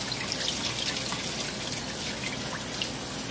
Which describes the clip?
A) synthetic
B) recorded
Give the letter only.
B